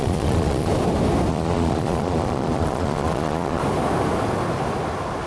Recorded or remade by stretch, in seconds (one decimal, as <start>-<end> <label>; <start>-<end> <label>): 0.0-0.7 remade; 0.7-1.3 recorded; 1.3-3.6 remade; 3.6-5.3 recorded